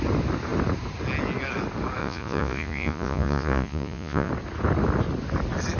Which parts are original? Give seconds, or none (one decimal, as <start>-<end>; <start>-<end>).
0.0-2.0; 4.3-5.8